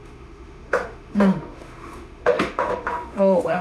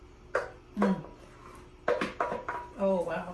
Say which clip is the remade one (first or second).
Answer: first